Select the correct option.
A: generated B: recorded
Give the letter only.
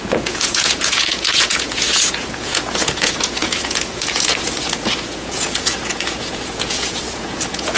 A